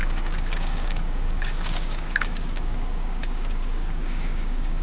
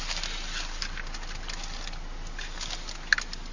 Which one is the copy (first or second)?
first